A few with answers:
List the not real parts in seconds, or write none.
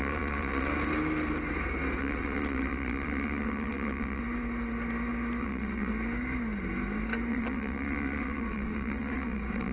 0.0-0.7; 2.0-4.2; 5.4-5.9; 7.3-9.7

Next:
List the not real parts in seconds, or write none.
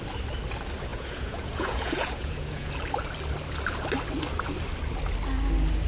0.9-2.7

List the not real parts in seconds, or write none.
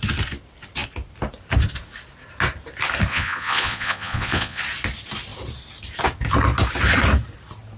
3.1-4.6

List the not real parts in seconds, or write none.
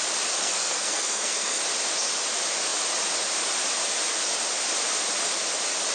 0.4-1.6